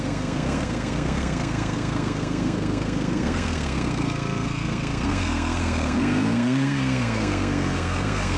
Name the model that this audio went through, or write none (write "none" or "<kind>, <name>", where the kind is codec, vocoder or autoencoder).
codec, SNAC